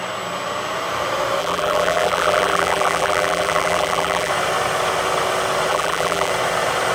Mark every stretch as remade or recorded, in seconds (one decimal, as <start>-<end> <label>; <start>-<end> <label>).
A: 0.0-1.4 recorded; 1.4-4.3 remade; 4.3-5.7 recorded; 5.7-6.3 remade; 6.3-6.9 recorded